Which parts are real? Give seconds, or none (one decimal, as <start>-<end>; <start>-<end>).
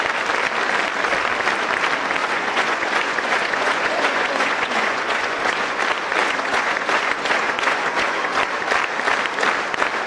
0.0-2.2; 5.8-6.2; 8.4-10.1